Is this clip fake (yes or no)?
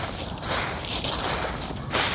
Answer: no